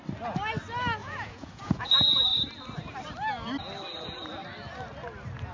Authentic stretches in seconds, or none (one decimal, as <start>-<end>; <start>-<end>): 0.0-1.0; 1.9-5.5